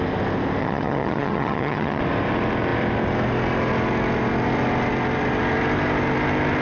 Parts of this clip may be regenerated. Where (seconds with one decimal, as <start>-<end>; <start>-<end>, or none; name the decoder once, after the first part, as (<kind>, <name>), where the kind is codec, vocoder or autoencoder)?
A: 0.6-2.0 (vocoder, HiFi-GAN)

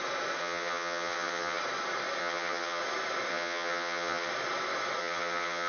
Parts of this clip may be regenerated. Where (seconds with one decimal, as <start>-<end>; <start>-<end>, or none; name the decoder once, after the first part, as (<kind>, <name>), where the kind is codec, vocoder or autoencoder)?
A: 0.4-1.6 (vocoder, HiFi-GAN); 2.2-2.8; 3.3-4.3; 5.0-5.7